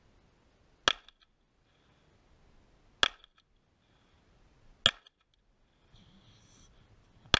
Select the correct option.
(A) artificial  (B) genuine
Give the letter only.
B